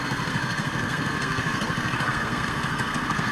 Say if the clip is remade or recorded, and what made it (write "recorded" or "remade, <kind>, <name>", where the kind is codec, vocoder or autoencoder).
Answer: remade, codec, SNAC